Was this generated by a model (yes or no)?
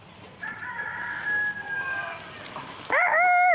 no